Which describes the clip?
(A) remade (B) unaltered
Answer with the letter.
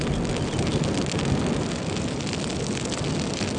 B